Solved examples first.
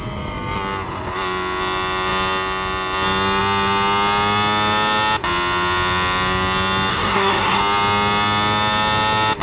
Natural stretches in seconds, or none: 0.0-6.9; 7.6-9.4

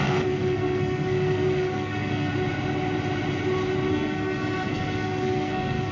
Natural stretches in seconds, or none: 2.3-3.9

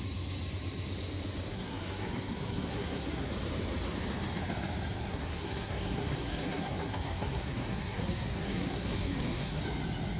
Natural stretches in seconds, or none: 0.0-1.5; 3.3-5.1; 9.6-10.2

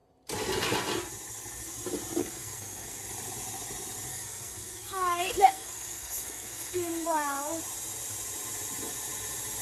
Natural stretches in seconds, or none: 0.0-2.2; 3.1-4.1; 7.6-9.6

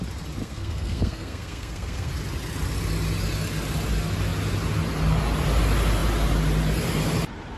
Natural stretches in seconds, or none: 0.0-0.4; 2.1-7.6

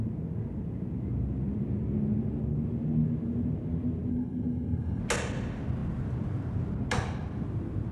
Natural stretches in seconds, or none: 0.0-4.1; 5.0-7.9

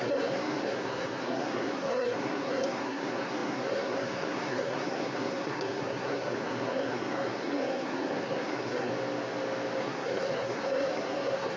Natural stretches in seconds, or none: 8.9-9.8